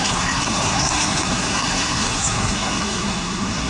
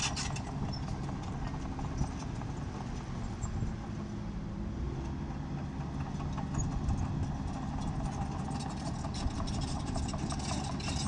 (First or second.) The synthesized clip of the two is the first